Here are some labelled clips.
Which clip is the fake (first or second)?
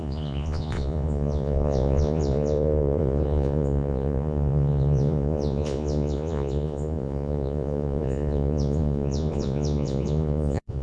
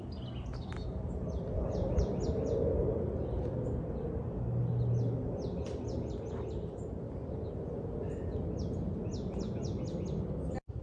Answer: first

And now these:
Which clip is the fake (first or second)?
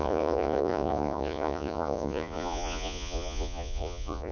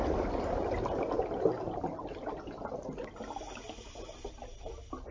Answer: first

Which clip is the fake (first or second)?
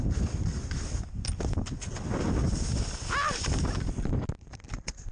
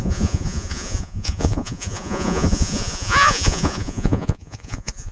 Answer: second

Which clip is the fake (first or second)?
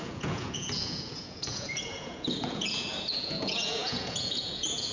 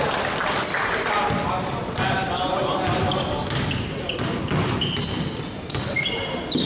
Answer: first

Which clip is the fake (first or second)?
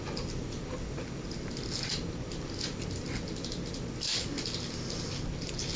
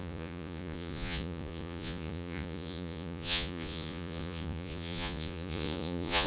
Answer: second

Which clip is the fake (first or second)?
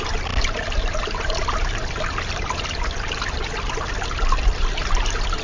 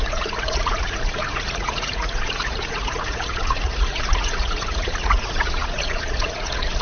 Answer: second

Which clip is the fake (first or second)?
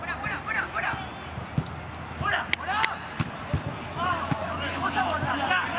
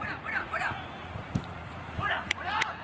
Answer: second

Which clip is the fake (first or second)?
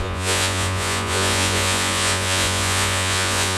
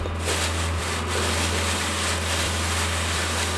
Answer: first